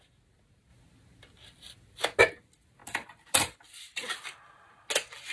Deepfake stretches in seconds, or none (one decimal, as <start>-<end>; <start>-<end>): none